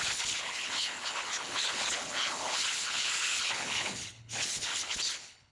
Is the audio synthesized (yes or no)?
yes